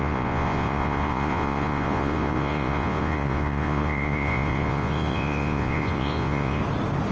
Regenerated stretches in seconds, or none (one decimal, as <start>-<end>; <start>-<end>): 0.0-6.6